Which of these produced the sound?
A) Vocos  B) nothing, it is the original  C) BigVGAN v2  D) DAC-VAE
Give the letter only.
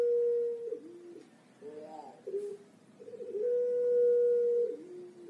B